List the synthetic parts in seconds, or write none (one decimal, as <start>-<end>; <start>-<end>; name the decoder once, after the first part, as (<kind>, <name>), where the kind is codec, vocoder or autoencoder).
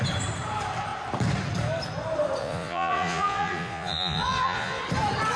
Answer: 2.4-4.8 (vocoder, Vocos)